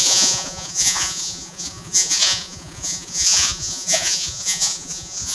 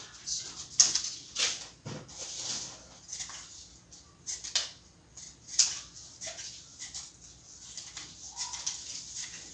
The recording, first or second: second